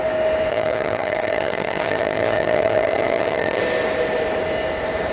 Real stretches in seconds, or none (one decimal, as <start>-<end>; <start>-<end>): 0.0-0.5; 3.6-5.1

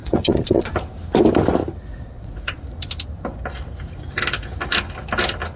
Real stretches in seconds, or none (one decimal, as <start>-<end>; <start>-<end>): 0.7-1.9; 2.6-5.6